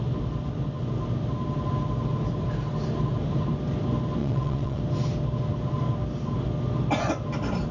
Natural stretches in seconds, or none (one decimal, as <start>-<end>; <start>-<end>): 0.0-4.2; 4.8-7.7